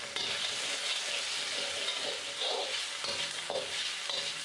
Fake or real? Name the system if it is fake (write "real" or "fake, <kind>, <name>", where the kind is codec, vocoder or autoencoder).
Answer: real